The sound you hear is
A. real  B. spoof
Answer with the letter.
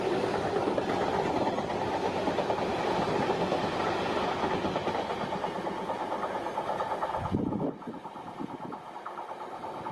A